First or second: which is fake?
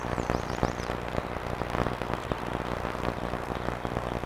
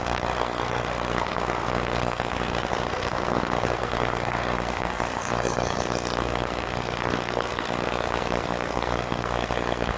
second